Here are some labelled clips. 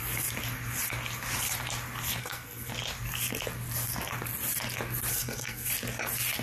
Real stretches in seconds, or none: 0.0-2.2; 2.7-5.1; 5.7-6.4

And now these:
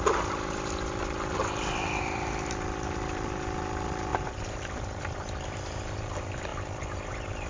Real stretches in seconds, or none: 0.0-7.5

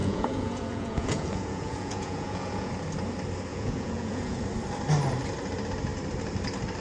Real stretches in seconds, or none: 2.7-3.5; 4.4-6.8

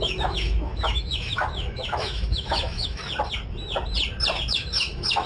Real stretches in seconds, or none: 3.0-4.5